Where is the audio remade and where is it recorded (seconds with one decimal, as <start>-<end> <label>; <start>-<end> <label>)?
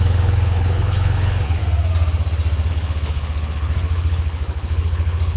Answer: 0.0-1.6 remade; 1.6-2.7 recorded; 2.7-5.4 remade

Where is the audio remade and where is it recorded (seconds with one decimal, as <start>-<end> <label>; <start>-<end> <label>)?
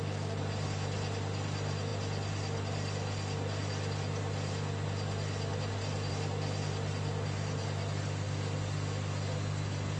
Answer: 0.0-10.0 recorded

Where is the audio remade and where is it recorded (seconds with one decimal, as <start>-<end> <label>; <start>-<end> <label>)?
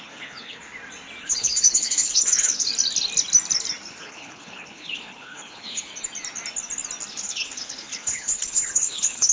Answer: 0.0-0.6 remade; 0.6-1.2 recorded; 1.2-2.7 remade; 2.7-4.0 recorded; 4.0-5.9 remade; 5.9-7.1 recorded; 7.1-9.3 remade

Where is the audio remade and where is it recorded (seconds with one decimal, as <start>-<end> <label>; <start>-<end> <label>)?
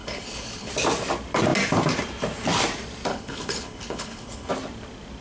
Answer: 0.0-0.7 remade; 0.7-3.1 recorded; 3.1-4.5 remade; 4.5-5.2 recorded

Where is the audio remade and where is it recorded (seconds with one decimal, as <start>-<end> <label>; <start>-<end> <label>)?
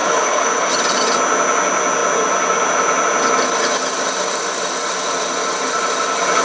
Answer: 0.0-0.7 remade; 0.7-6.4 recorded